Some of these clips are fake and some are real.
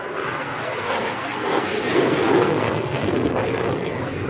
fake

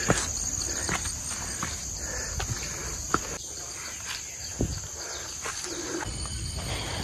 real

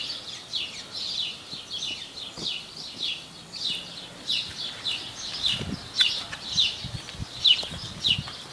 real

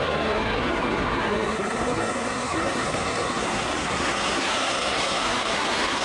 fake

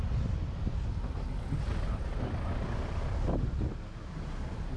real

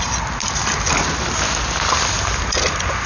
real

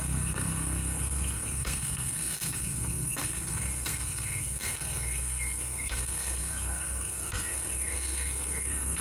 fake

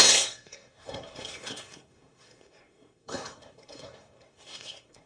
fake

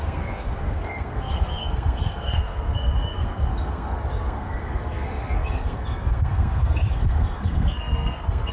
fake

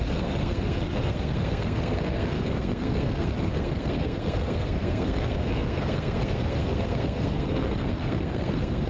fake